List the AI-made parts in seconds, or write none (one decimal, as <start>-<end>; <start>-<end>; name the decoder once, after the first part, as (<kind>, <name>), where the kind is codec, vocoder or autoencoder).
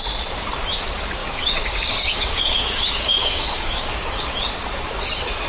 1.2-4.5 (codec, DAC)